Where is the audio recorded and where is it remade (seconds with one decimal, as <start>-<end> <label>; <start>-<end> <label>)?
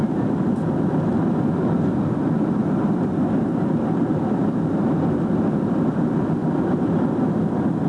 0.0-2.6 recorded; 2.6-5.2 remade; 5.2-7.9 recorded